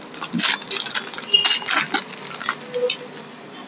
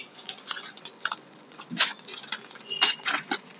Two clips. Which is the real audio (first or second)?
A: first